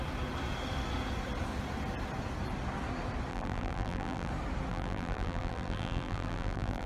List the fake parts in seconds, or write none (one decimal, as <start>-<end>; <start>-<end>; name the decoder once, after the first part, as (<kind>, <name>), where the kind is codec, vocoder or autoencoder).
3.3-4.3 (vocoder, BigVGAN v2); 4.7-6.9